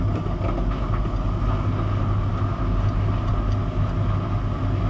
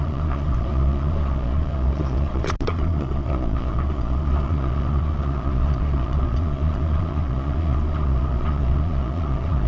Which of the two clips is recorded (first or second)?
first